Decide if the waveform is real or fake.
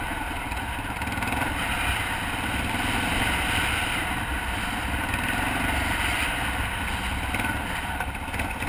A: real